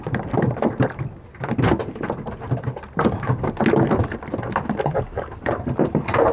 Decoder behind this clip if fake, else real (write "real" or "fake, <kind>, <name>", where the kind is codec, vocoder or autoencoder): real